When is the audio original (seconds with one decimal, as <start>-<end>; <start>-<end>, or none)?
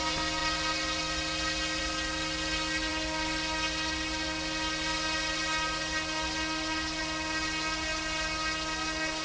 0.0-9.2